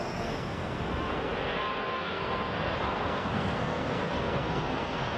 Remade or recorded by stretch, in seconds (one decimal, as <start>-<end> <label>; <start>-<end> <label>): 0.0-5.2 remade